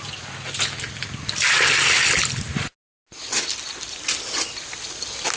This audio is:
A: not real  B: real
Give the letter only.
B